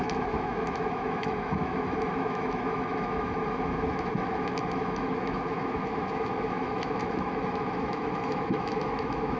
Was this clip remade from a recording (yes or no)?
yes